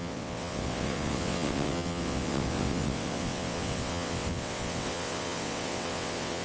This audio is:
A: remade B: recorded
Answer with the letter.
A